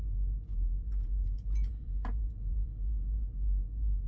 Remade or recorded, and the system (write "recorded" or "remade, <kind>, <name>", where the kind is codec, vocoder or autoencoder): remade, vocoder, BigVGAN v2